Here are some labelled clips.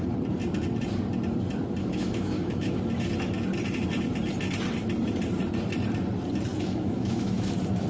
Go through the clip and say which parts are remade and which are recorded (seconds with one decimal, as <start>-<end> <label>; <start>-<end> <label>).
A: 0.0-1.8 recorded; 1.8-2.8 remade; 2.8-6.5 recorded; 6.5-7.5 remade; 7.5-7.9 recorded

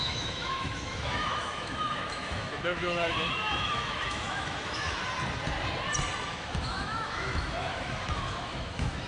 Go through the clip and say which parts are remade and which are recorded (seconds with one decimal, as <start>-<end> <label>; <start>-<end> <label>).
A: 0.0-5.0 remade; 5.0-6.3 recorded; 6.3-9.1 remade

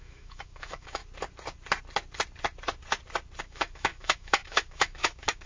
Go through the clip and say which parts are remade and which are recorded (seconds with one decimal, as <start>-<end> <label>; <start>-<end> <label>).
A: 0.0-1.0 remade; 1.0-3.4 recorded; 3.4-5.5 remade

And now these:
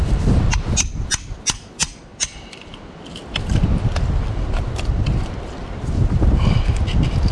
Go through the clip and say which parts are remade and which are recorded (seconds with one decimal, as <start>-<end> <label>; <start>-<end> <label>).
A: 0.0-7.3 recorded

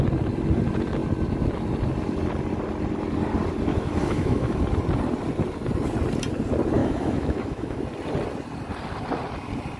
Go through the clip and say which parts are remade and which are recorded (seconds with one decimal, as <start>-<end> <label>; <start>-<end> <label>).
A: 0.0-3.7 recorded; 3.7-4.6 remade; 4.6-6.8 recorded; 6.8-7.8 remade; 7.8-9.8 recorded

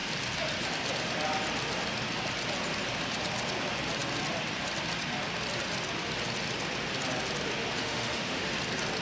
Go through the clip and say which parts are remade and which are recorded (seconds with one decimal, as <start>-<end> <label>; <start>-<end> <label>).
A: 0.0-7.8 recorded; 7.8-8.5 remade; 8.5-9.0 recorded